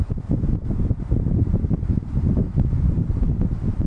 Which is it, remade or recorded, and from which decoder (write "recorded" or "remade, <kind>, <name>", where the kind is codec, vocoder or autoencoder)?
remade, vocoder, BigVGAN v2